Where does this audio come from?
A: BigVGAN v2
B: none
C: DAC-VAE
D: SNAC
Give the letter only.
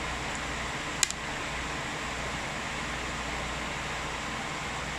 B